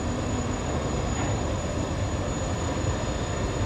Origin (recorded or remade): recorded